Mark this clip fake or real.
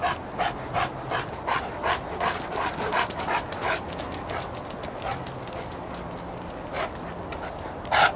real